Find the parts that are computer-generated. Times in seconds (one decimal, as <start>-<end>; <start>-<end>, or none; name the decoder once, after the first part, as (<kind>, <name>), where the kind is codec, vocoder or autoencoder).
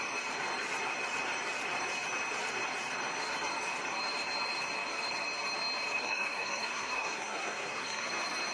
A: 6.0-8.1 (codec, SNAC)